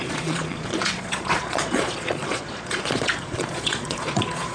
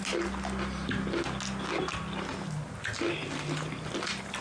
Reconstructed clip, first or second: first